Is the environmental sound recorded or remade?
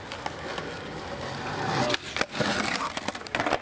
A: recorded